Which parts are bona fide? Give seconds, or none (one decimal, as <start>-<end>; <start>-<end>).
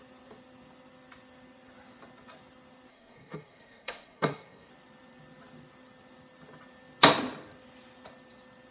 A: 0.0-2.9; 4.7-8.7